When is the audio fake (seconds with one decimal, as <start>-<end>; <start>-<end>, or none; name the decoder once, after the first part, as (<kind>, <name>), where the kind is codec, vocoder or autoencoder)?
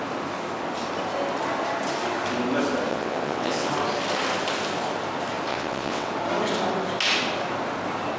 2.9-3.7 (vocoder, WaveNeXt); 5.5-6.1